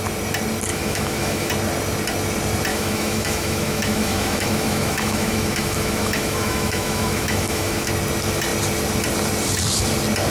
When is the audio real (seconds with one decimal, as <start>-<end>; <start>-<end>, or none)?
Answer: 0.0-0.7; 1.5-2.7; 7.9-10.3

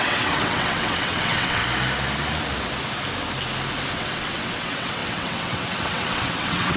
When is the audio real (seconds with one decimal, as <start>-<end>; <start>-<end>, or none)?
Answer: 1.6-3.9

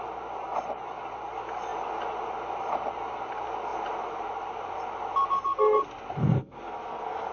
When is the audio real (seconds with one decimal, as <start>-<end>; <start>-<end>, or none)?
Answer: 0.0-6.2

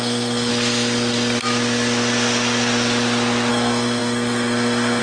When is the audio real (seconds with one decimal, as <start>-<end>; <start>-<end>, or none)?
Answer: 0.5-3.5

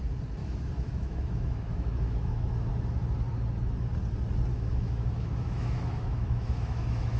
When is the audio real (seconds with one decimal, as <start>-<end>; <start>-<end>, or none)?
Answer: 0.0-0.4; 2.7-4.5